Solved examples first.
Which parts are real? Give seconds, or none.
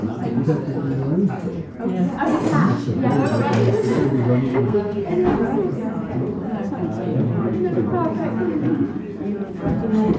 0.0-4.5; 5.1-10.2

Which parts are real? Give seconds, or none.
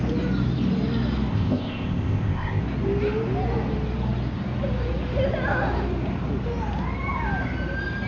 0.0-1.3; 2.6-8.1